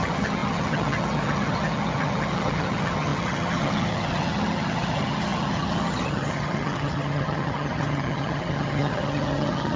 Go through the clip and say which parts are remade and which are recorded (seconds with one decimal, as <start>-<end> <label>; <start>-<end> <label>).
0.0-9.8 remade